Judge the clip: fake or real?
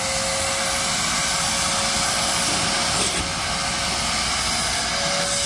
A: real